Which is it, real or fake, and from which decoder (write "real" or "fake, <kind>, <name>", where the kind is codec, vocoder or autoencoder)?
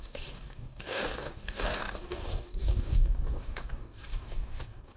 fake, codec, DAC